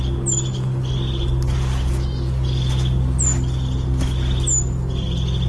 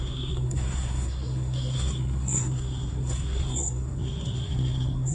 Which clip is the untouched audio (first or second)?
first